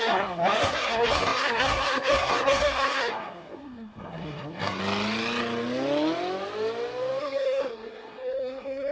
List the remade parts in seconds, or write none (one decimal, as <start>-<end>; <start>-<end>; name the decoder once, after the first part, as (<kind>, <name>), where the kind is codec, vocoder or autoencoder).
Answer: 0.0-4.8 (codec, SNAC); 7.2-8.9